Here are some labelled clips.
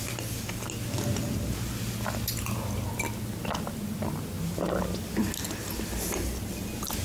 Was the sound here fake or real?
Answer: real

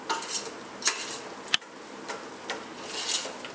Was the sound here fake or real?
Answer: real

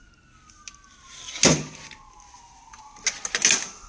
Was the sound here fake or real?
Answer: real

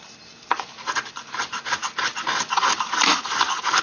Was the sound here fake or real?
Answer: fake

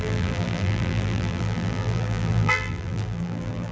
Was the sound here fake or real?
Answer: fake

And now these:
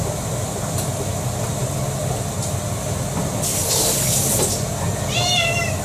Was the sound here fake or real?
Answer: real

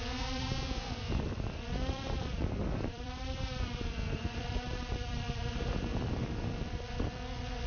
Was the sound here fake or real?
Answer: fake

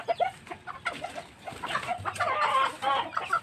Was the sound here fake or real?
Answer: real